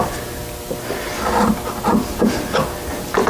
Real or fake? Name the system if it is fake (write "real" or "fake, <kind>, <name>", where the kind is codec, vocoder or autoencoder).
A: real